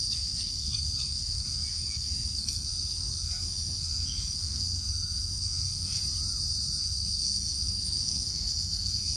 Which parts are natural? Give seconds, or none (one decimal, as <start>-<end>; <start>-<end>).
6.0-6.8